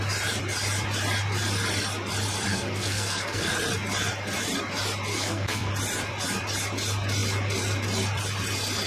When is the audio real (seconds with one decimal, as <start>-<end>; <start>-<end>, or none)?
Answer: 0.0-2.5; 3.5-5.1; 5.7-8.9